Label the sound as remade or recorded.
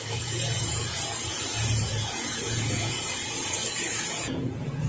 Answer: remade